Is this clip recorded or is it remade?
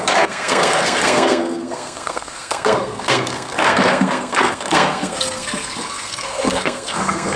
remade